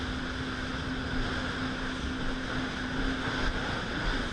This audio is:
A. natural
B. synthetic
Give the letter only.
A